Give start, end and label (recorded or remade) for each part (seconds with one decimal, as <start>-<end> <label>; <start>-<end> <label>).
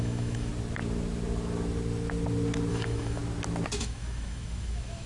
0.0-0.5 remade; 0.5-2.7 recorded; 2.7-3.2 remade; 3.2-3.8 recorded; 3.8-5.1 remade